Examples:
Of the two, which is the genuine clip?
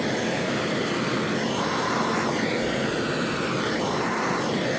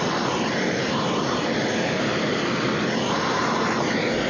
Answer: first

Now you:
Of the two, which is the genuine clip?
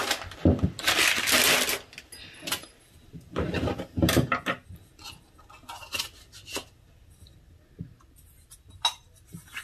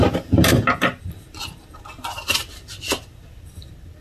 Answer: first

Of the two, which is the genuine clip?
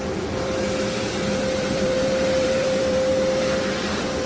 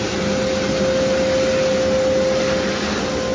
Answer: second